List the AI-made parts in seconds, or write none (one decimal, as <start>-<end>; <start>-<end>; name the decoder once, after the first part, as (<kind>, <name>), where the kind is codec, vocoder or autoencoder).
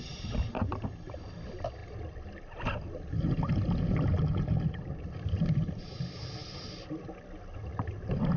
none